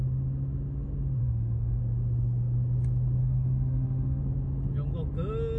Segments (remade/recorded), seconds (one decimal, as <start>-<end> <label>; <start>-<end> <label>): 0.0-1.2 recorded; 1.2-1.8 remade; 1.8-3.2 recorded; 3.2-4.2 remade; 4.2-5.6 recorded